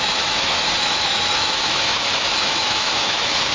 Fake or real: fake